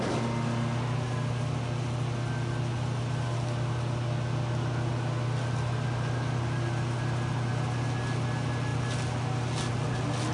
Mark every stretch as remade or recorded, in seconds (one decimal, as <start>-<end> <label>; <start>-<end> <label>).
0.0-10.3 recorded

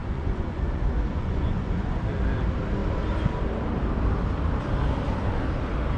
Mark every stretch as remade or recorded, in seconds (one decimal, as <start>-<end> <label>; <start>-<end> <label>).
0.0-2.0 remade; 2.0-6.0 recorded

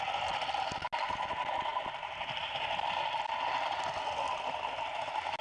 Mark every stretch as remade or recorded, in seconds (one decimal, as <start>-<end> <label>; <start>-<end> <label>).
0.0-5.4 recorded

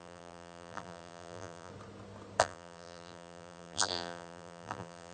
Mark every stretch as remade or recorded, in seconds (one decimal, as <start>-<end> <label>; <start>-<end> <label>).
0.0-1.7 remade; 1.7-2.4 recorded; 2.4-5.1 remade

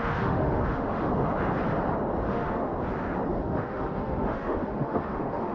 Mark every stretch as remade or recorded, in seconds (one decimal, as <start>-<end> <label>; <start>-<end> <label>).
0.0-1.1 remade; 1.1-2.3 recorded; 2.3-2.7 remade; 2.7-3.4 recorded; 3.4-5.5 remade

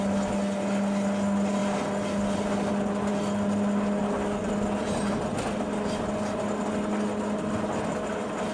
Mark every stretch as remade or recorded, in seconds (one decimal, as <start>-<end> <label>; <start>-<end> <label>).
0.0-8.5 recorded